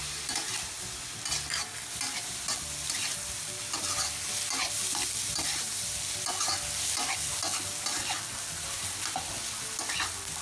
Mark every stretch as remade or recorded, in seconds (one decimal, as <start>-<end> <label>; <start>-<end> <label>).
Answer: 0.0-10.4 recorded